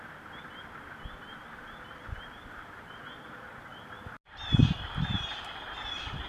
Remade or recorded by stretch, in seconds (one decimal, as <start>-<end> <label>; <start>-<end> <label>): 0.0-6.3 recorded